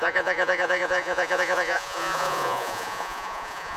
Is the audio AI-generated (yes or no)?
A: yes